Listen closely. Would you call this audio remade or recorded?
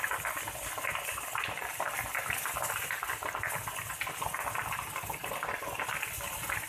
recorded